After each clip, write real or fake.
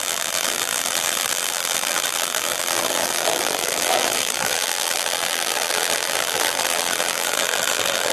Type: fake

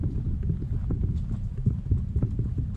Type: fake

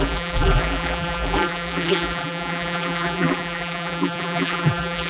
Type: fake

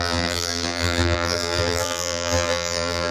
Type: fake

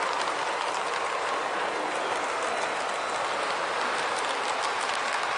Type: real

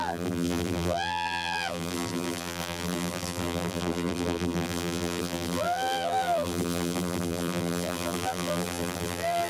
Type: fake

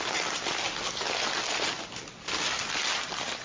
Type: real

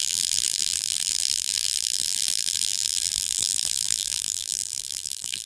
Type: fake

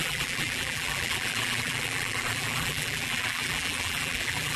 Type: fake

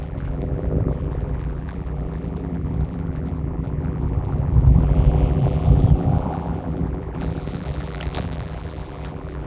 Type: fake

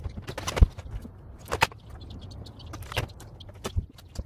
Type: real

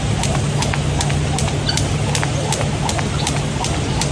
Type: real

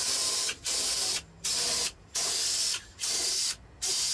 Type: real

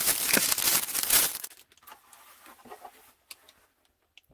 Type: fake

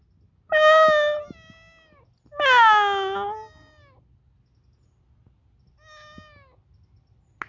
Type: real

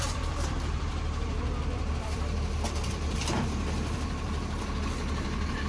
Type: fake